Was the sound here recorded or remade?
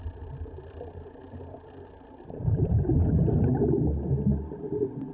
recorded